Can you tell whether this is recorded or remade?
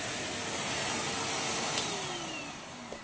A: recorded